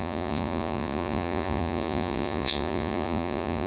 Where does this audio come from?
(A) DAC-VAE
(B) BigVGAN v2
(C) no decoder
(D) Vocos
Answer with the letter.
D